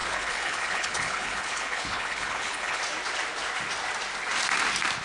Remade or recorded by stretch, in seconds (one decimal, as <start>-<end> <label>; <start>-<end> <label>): 0.0-2.8 remade; 2.8-5.0 recorded